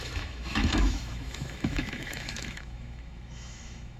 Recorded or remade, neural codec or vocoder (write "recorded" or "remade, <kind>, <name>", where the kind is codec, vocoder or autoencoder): remade, autoencoder, DAC-VAE